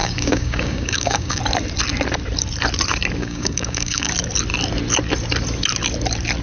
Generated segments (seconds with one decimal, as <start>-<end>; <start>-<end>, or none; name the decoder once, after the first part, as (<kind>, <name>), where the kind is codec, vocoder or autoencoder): 0.0-1.4 (codec, DAC); 3.2-4.1